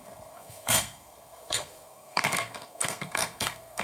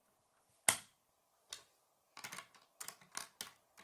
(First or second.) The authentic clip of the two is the second